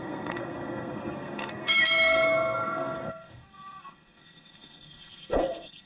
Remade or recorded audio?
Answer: remade